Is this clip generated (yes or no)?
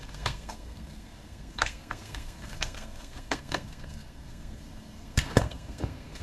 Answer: yes